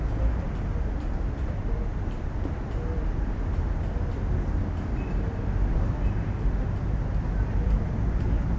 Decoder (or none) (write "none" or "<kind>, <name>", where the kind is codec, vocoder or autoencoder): none